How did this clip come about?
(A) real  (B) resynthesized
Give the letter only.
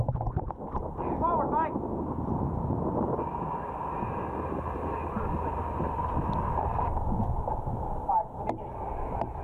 A